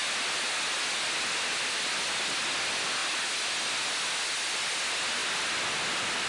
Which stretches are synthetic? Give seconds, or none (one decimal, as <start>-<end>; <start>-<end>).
none